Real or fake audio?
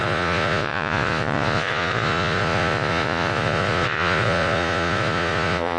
fake